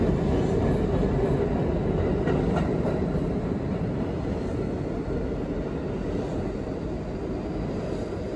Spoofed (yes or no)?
no